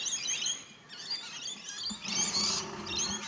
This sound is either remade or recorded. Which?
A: recorded